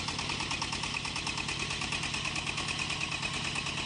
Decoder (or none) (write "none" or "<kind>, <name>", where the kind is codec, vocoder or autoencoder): none